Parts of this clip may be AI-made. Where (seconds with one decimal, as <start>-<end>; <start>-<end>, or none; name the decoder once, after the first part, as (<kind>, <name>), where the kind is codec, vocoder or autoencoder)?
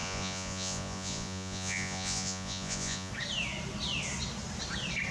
0.0-3.1 (vocoder, Vocos)